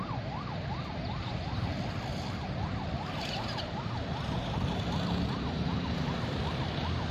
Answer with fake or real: real